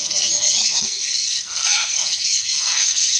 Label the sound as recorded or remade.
remade